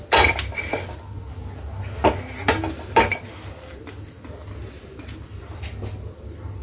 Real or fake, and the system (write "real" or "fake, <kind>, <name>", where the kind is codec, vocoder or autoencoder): real